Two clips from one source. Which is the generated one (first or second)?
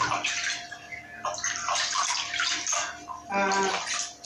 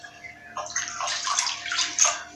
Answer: second